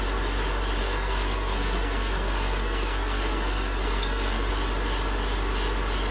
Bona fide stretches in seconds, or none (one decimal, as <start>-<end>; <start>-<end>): 0.0-0.8; 4.5-6.1